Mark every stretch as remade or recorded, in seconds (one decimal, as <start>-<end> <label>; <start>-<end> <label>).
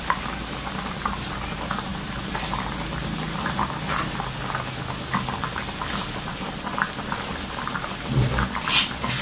0.0-9.2 recorded